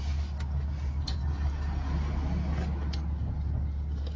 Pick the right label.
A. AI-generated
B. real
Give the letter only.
B